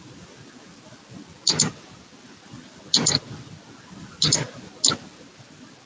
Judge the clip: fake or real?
real